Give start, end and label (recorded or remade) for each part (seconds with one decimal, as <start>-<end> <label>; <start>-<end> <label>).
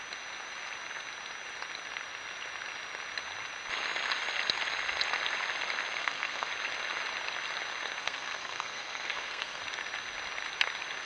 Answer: 0.0-6.0 recorded; 6.0-6.5 remade; 6.5-8.0 recorded; 8.0-9.6 remade; 9.6-11.1 recorded